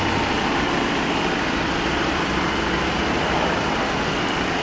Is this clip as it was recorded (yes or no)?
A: no